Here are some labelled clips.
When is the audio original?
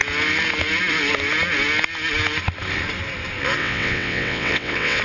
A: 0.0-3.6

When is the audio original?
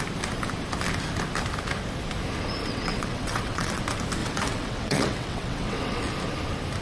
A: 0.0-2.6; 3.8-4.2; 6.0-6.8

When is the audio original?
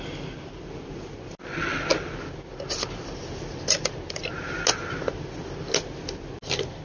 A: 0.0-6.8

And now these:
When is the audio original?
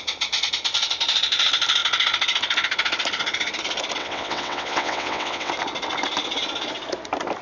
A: 0.0-4.0; 5.5-7.4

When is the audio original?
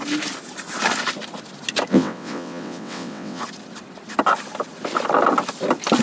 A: 0.0-1.9; 3.4-6.0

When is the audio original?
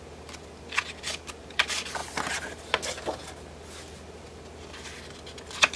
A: 0.0-5.8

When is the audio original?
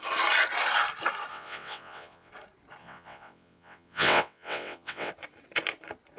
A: 0.0-1.3; 2.3-2.8; 5.1-6.2